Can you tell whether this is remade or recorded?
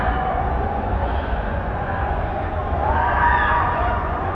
remade